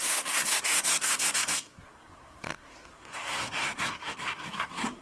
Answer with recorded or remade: remade